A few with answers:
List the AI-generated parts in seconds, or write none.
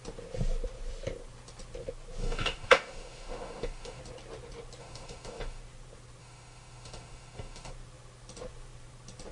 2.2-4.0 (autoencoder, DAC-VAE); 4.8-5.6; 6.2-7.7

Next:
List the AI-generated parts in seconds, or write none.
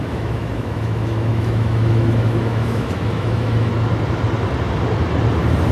0.0-3.7 (autoencoder, DAC-VAE)